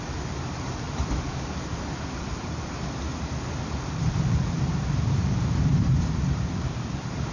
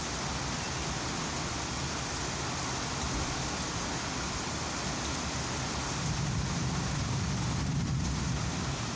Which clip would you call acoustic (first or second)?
second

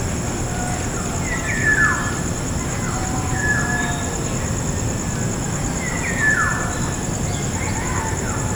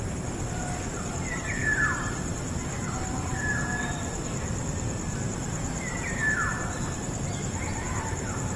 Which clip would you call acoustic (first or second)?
first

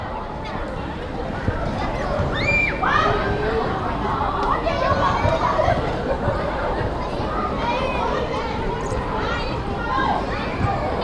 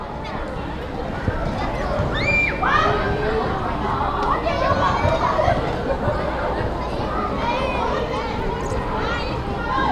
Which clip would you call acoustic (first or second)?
second